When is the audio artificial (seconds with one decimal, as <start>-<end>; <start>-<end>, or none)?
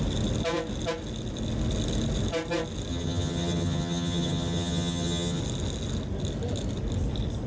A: 2.9-5.4